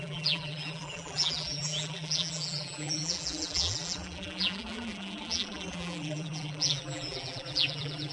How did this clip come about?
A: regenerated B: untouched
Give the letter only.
A